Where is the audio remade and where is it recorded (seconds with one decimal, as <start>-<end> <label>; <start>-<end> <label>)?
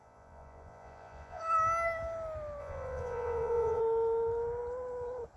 0.0-1.4 remade; 1.4-2.6 recorded; 2.6-3.8 remade; 3.8-5.4 recorded